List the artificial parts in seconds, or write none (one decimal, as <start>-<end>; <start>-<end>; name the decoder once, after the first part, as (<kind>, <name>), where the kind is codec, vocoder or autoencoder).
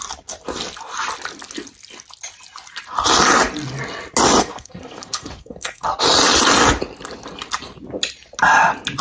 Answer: 4.4-5.9 (codec, SNAC)